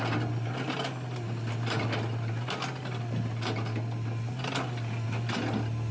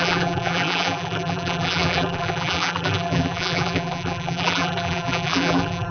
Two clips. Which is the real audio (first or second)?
first